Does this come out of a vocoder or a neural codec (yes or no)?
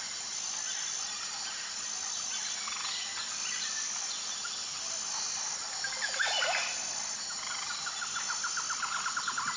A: no